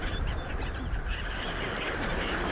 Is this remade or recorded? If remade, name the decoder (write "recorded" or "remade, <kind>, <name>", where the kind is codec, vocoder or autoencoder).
recorded